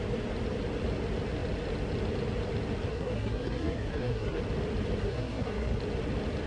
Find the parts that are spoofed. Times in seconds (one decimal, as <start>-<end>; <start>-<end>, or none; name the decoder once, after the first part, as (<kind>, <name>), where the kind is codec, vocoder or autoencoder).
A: 2.9-4.4 (codec, SNAC); 5.0-5.8